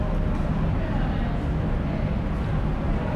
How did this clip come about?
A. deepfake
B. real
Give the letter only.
B